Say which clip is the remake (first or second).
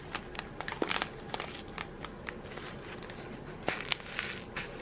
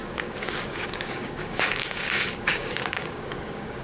second